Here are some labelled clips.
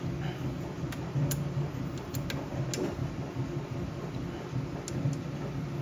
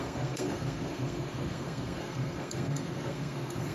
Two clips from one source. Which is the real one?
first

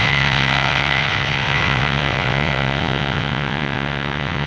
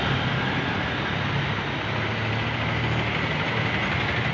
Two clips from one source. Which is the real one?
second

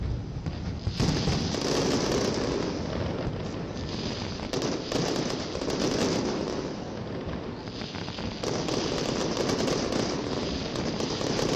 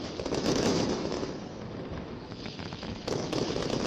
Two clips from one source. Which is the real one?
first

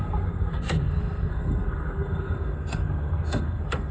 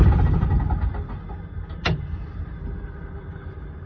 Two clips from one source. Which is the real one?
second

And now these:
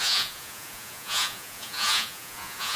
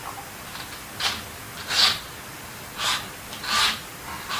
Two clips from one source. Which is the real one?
second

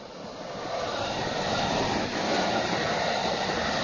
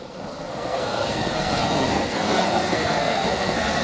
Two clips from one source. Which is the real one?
first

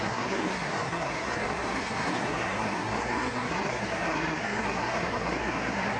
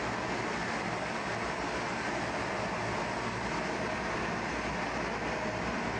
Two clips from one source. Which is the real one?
second